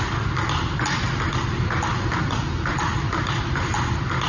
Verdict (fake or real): real